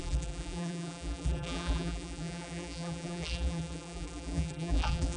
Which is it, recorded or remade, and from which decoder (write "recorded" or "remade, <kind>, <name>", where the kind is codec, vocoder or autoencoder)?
remade, vocoder, BigVGAN v2